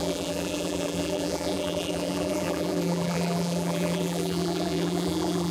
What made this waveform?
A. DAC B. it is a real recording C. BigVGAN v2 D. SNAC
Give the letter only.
C